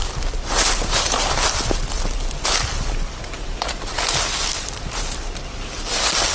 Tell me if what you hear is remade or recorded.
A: remade